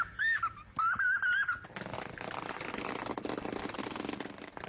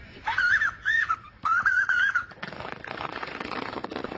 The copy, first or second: second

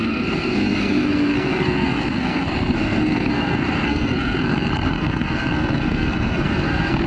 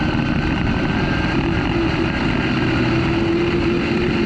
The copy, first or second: first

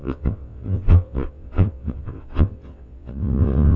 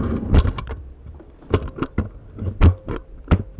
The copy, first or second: first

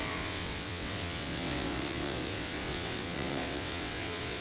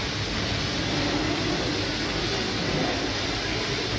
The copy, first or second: first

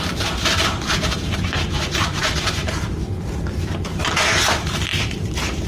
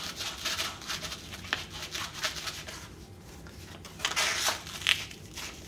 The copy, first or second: first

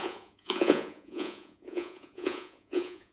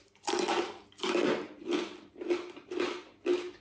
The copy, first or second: first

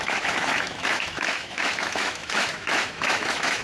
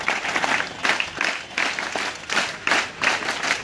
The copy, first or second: first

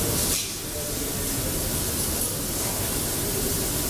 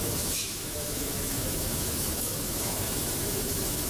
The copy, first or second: second